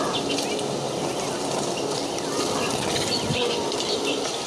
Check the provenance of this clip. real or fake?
real